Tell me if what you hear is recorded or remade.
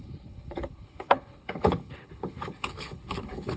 remade